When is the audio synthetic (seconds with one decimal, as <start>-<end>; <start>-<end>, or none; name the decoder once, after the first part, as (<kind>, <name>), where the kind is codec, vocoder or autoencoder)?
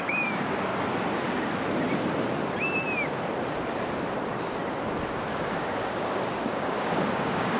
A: 0.0-0.7 (codec, DAC); 5.3-7.6